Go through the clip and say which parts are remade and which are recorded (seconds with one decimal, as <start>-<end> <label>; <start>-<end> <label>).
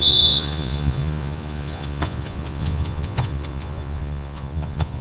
0.0-5.0 remade